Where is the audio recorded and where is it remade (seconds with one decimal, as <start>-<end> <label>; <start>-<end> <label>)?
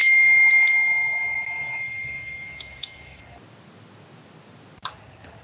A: 0.0-3.2 remade; 3.2-5.4 recorded